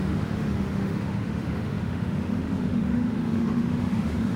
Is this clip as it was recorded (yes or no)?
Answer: no